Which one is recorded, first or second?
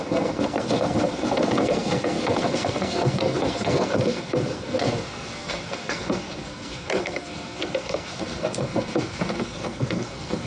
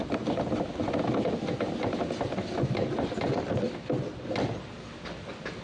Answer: second